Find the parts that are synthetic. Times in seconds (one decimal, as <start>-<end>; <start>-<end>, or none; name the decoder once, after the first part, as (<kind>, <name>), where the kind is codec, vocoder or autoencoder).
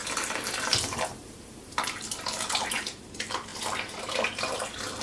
0.0-5.0 (vocoder, BigVGAN v2)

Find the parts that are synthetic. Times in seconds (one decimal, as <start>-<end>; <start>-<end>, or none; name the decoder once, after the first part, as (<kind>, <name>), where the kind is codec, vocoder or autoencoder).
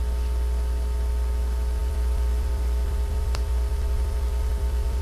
1.8-5.0 (vocoder, BigVGAN v2)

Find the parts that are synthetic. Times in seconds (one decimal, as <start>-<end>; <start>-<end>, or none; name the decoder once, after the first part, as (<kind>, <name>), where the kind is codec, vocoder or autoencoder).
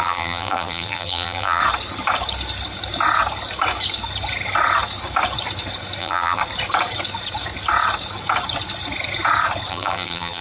0.0-1.6 (vocoder, BigVGAN v2); 6.0-6.4; 9.7-10.4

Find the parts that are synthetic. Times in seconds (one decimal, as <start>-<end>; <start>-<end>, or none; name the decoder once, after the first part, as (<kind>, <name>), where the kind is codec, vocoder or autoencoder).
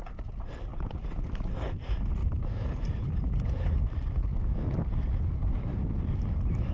2.2-4.2 (vocoder, BigVGAN v2)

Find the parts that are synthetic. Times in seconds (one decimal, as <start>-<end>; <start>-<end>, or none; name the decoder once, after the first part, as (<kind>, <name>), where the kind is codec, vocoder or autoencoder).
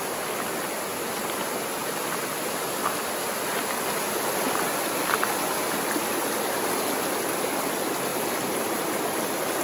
8.1-9.0 (vocoder, BigVGAN v2)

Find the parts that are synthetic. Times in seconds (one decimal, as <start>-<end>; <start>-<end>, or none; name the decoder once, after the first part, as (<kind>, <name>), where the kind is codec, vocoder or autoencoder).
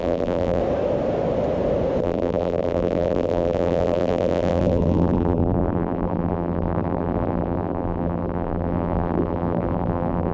0.0-0.6 (vocoder, BigVGAN v2); 2.0-10.3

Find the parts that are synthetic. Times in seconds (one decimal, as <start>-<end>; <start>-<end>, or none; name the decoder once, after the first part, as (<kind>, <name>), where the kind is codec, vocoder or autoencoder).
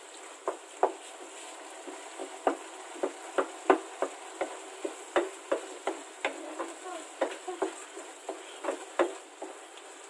none